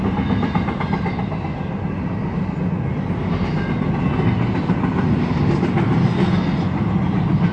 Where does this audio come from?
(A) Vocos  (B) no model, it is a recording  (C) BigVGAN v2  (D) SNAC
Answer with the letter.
B